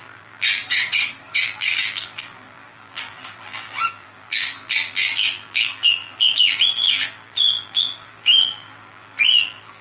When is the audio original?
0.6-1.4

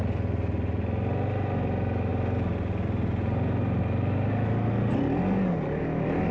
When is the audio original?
0.0-6.3

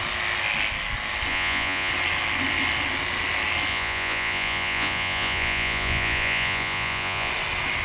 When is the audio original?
0.0-1.3; 1.9-3.7; 7.3-7.8

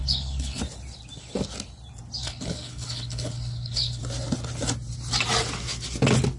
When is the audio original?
0.6-2.2; 4.0-6.4

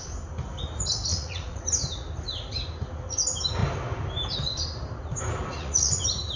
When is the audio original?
0.0-1.1; 1.6-5.5; 6.0-6.4

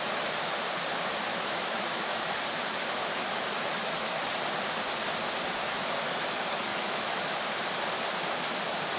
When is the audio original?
0.0-1.3; 2.3-6.7; 7.4-9.0

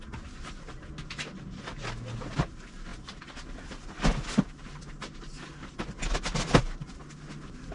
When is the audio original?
0.0-7.7